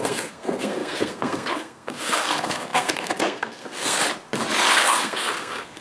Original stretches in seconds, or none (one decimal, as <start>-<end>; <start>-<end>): 4.0-4.7